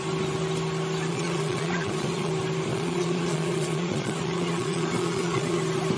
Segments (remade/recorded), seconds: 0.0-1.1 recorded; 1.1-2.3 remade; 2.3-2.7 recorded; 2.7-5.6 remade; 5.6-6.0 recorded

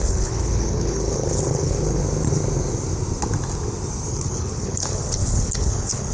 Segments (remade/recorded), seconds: 0.0-2.0 remade; 2.0-4.1 recorded; 4.1-6.1 remade

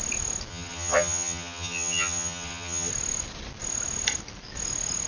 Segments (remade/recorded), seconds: 0.0-0.5 recorded; 0.5-2.9 remade; 2.9-5.1 recorded